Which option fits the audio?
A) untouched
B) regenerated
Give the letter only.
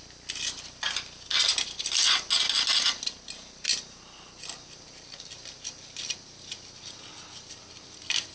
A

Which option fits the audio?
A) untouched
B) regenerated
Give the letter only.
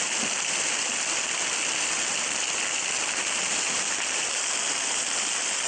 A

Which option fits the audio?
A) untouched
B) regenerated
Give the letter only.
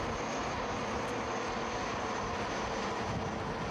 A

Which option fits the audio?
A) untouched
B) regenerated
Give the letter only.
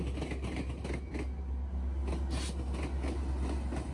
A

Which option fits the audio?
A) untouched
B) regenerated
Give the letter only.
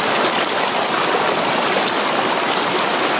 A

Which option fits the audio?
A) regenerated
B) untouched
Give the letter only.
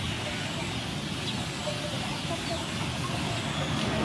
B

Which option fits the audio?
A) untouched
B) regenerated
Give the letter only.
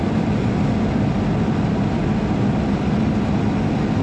A